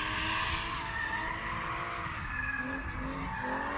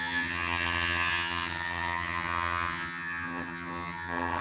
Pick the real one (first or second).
first